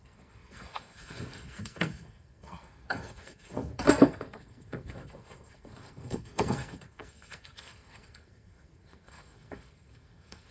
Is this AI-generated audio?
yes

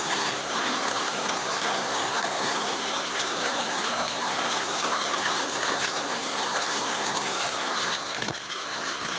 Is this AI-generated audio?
yes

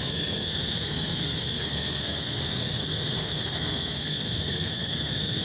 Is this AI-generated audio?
yes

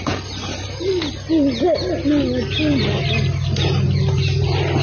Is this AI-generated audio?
no